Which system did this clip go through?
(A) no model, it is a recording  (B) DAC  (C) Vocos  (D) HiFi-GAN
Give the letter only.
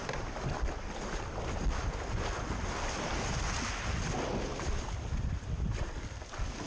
A